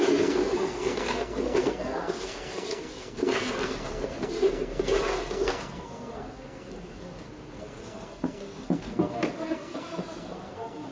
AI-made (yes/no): yes